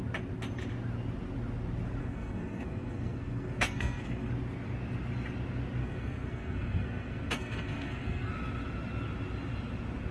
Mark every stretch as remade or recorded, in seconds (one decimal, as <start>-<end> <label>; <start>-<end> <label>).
0.0-2.0 recorded; 2.0-4.3 remade; 4.3-5.8 recorded; 5.8-8.3 remade; 8.3-10.1 recorded